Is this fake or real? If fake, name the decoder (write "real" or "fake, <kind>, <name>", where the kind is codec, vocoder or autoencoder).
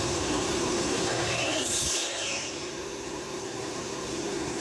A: fake, codec, SNAC